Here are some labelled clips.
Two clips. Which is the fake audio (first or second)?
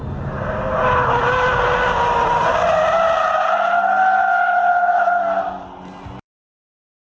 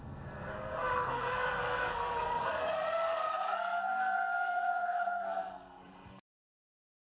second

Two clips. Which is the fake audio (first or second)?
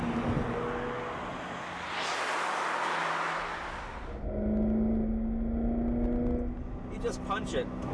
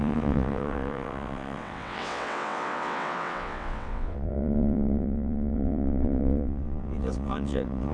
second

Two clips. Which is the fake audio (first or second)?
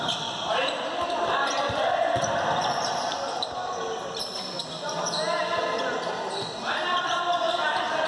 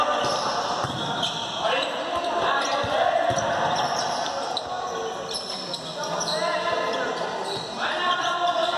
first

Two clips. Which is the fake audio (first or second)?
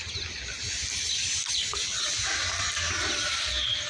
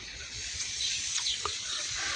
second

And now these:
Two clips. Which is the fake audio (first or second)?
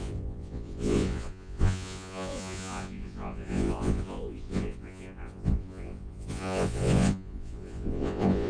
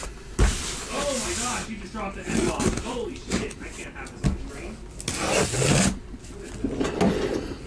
first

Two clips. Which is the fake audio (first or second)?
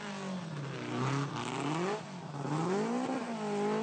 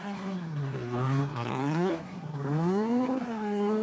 second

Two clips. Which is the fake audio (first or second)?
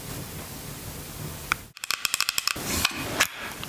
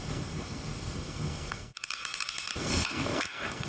second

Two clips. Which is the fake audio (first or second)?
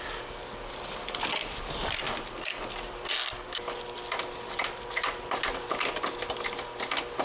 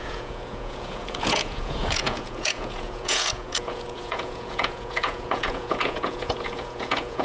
second